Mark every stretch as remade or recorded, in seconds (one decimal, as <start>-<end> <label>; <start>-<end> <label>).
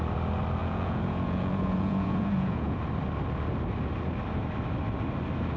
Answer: 0.0-0.6 recorded; 0.6-2.8 remade; 2.8-5.6 recorded